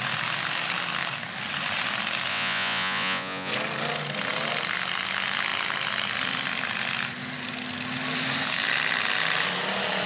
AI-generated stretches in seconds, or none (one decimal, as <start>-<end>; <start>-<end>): 2.3-3.5